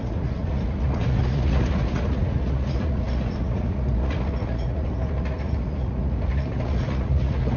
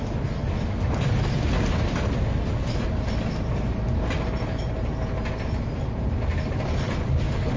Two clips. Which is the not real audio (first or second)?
first